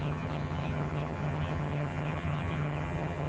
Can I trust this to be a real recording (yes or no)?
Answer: no